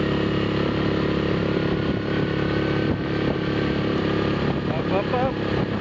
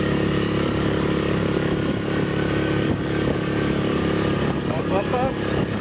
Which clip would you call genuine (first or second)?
first